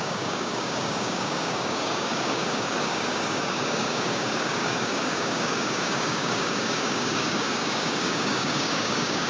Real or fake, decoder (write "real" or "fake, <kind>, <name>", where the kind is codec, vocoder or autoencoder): fake, codec, DAC